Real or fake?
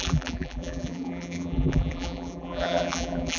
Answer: fake